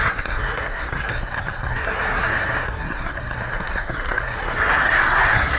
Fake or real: fake